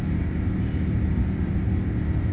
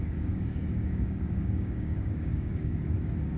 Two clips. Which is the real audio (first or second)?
first